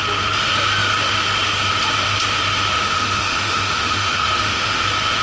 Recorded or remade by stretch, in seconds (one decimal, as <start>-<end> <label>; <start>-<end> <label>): 0.0-2.7 recorded; 2.7-4.8 remade; 4.8-5.2 recorded